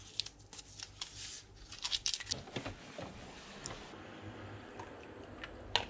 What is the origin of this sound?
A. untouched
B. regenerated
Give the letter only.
A